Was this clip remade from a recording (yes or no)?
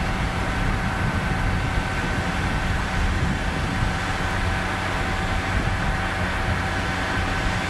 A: no